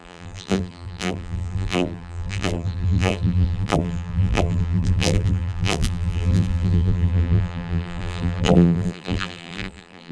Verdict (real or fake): fake